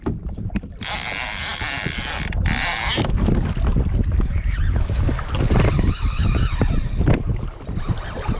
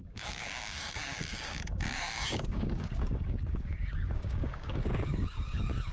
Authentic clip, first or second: first